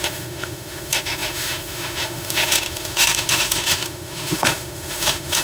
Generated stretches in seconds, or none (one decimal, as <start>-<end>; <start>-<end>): 0.0-5.4